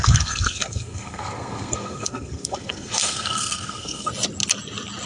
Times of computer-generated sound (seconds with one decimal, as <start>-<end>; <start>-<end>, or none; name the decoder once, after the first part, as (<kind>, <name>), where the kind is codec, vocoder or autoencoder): 0.0-4.1 (codec, SNAC)